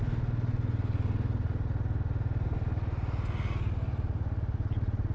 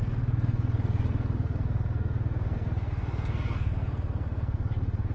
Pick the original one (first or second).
first